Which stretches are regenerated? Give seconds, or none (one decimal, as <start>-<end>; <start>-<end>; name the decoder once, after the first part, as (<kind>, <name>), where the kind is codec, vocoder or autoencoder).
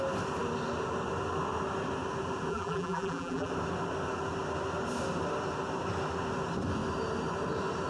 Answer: 2.5-3.5 (vocoder, BigVGAN v2)